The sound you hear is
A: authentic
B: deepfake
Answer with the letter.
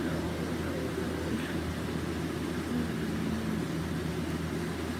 A